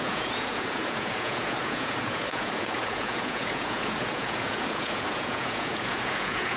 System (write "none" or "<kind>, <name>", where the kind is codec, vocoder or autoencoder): vocoder, Vocos